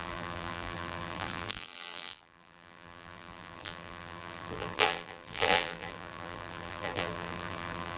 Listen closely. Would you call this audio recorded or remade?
remade